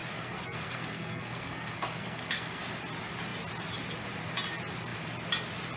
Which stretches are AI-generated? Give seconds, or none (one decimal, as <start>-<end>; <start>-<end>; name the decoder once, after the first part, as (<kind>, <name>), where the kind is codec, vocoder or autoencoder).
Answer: 0.0-2.6 (codec, SNAC)

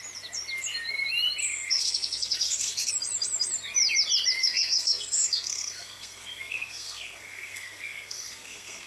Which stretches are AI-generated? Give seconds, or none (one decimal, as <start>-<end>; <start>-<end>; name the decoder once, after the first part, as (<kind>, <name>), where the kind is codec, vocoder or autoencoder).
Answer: 1.4-2.9 (codec, SNAC); 4.4-8.9

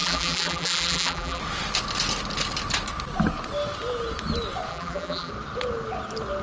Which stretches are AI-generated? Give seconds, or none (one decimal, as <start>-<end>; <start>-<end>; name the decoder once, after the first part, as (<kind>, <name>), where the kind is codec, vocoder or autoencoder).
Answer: 0.0-1.4 (vocoder, BigVGAN v2); 4.7-5.3

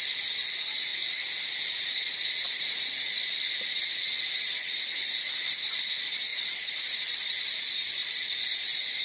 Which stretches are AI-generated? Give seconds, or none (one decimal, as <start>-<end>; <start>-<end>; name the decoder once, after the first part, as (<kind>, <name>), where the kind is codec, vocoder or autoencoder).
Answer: 6.3-7.3 (vocoder, BigVGAN v2)